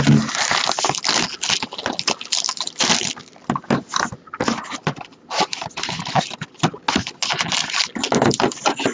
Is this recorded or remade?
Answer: recorded